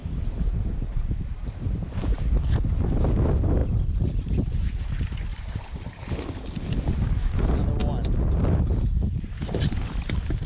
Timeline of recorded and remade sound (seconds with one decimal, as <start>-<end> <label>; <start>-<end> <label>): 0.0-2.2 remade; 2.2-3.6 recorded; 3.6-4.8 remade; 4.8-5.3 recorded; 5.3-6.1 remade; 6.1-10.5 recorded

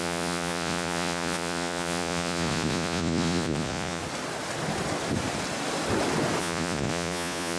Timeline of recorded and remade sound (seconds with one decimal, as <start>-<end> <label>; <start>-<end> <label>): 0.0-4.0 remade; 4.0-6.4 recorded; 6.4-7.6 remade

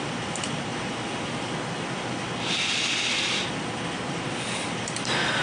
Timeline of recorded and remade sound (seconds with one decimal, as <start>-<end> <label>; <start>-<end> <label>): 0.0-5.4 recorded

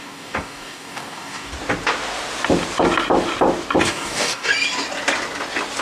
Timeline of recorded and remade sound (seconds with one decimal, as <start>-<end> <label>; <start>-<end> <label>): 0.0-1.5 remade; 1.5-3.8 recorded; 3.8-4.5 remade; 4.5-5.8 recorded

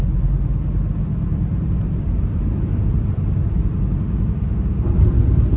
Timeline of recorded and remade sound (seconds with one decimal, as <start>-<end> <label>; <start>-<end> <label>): 0.0-1.3 recorded; 1.3-3.8 remade; 3.8-5.6 recorded